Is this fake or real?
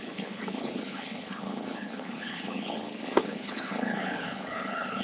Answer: fake